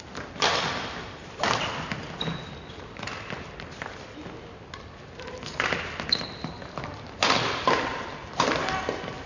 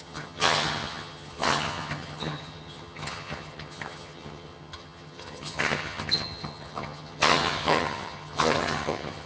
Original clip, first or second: first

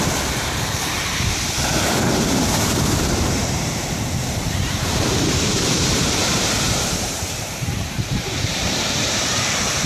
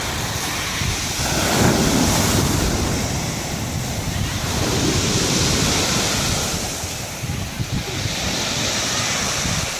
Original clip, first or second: second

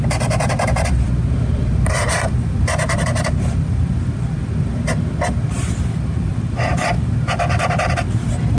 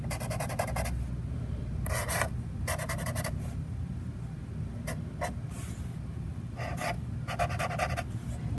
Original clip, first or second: second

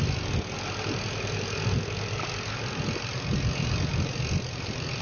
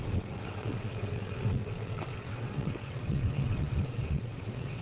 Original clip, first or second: first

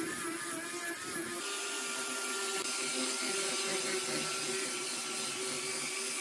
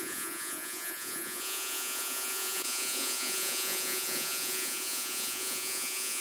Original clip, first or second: first